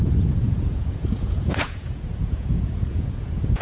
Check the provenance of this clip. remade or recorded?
remade